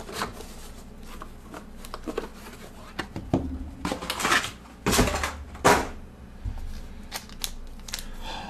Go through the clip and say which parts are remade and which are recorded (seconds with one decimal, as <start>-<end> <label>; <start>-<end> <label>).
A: 0.0-8.5 recorded